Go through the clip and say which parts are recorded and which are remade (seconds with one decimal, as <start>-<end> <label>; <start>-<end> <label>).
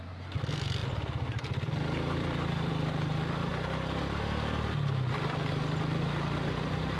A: 0.0-0.8 recorded; 0.8-2.7 remade; 2.7-7.0 recorded